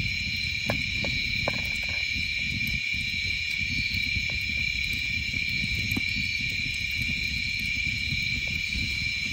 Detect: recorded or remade remade